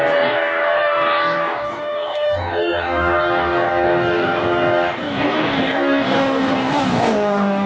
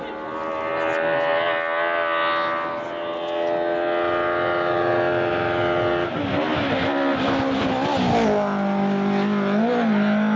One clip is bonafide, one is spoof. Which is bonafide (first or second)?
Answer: second